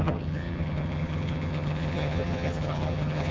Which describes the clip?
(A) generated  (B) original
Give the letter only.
A